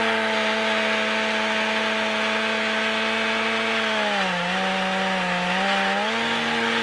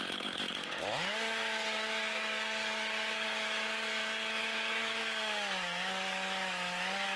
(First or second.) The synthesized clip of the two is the second